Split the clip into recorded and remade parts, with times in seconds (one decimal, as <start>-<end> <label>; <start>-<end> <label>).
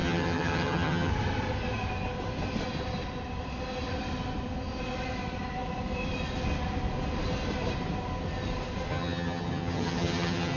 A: 0.0-1.1 remade; 1.1-8.9 recorded; 8.9-10.6 remade